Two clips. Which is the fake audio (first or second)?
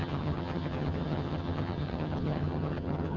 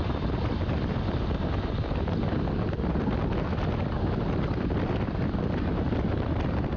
first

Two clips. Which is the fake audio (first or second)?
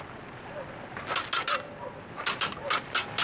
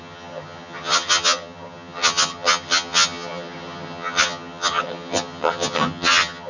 second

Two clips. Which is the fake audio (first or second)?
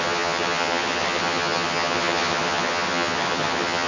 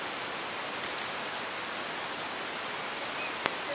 first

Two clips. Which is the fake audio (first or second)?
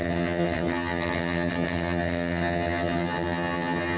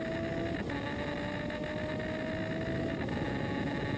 first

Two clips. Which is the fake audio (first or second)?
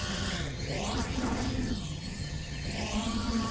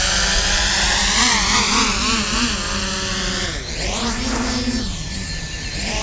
first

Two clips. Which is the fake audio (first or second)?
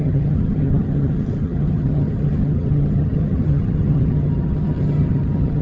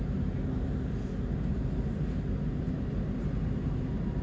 first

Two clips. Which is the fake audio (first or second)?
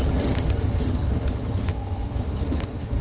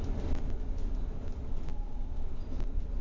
first